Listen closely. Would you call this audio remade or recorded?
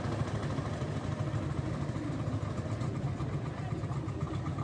recorded